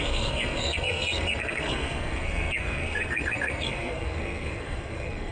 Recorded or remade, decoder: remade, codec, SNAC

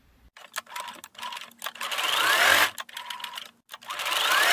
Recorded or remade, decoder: recorded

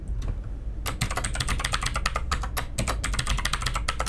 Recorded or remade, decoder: recorded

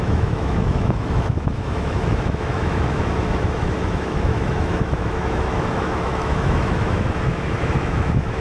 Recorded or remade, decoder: remade, autoencoder, DAC-VAE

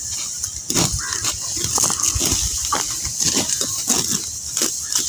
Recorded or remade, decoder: recorded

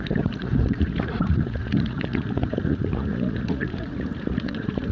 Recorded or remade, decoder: remade, vocoder, Vocos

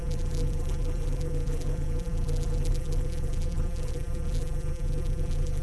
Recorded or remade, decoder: remade, vocoder, BigVGAN v2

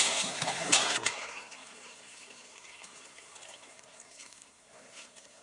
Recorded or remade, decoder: remade, codec, SNAC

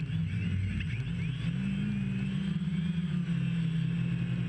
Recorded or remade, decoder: recorded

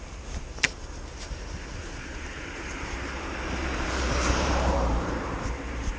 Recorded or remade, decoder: remade, vocoder, BigVGAN v2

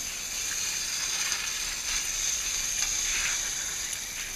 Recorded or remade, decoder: recorded